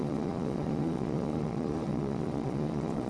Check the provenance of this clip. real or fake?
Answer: fake